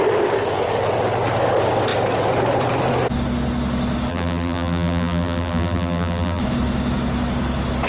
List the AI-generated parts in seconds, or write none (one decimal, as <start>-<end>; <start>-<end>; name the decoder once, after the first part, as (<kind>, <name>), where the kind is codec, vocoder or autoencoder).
4.1-6.4 (vocoder, BigVGAN v2)